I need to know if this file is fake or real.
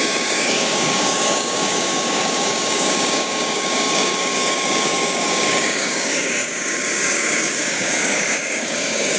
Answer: fake